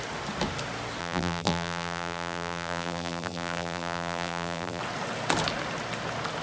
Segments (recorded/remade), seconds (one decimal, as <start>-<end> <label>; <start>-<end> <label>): 0.0-1.0 recorded; 1.0-4.8 remade; 4.8-6.4 recorded